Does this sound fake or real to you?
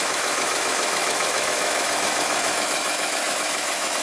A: fake